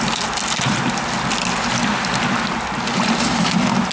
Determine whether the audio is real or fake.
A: real